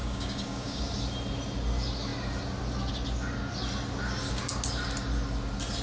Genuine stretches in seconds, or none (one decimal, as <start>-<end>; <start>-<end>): 0.8-5.8